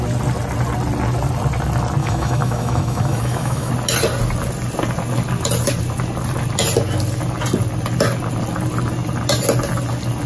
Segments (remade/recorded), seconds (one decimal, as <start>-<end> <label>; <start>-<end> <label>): 0.0-2.0 recorded; 2.0-3.7 remade; 3.7-10.3 recorded